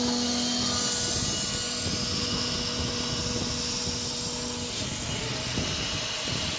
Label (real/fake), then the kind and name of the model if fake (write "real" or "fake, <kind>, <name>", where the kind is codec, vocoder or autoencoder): real